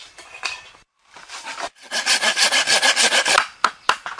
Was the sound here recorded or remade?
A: recorded